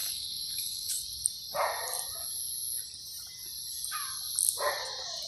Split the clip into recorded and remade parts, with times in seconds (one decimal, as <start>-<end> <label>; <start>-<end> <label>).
0.0-0.9 remade; 0.9-5.3 recorded